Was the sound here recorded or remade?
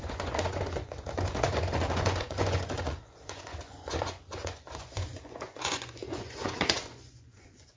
remade